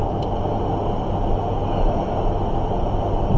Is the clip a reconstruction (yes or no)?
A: no